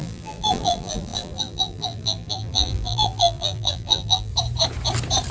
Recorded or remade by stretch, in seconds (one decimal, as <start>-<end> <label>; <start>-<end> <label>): 0.0-4.3 remade; 4.3-5.3 recorded